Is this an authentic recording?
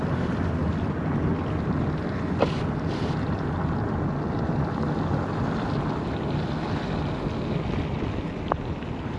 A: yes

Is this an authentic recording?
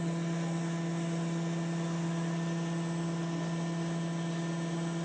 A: yes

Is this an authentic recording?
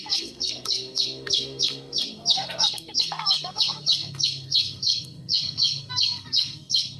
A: no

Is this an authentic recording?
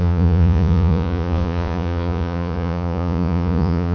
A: no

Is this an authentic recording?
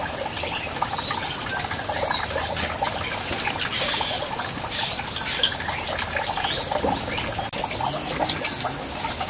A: yes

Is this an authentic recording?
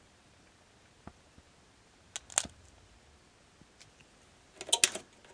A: yes